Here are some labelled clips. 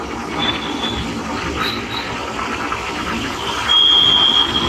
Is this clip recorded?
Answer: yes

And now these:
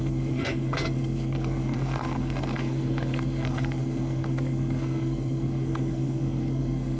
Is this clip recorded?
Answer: no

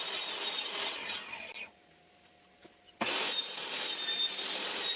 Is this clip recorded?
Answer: yes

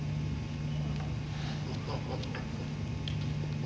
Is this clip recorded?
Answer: yes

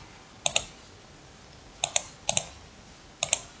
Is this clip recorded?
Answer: yes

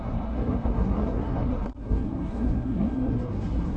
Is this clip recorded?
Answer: no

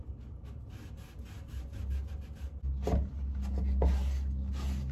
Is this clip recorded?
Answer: yes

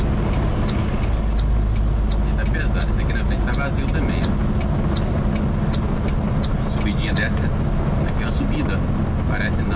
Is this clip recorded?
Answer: yes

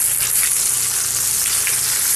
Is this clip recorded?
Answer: yes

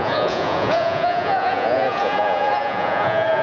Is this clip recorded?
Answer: no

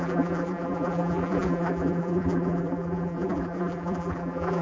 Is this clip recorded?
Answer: no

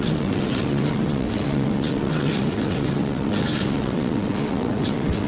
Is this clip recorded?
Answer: no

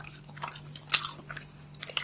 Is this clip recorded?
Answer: yes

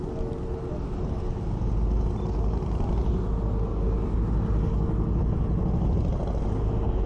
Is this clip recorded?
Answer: yes